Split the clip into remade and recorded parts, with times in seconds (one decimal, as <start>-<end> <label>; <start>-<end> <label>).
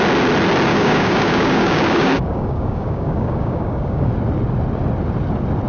0.0-0.7 recorded; 0.7-4.1 remade; 4.1-5.7 recorded